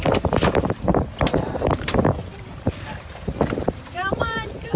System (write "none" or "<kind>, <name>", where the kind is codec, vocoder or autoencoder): vocoder, BigVGAN v2